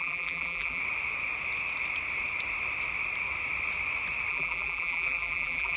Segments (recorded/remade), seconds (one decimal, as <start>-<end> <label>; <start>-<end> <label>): 0.0-0.8 remade; 0.8-4.3 recorded; 4.3-5.8 remade